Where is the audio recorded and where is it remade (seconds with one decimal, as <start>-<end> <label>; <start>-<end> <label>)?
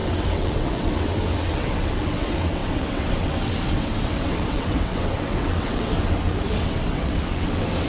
0.0-7.9 remade